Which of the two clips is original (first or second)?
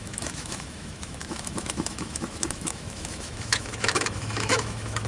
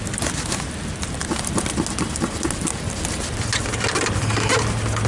second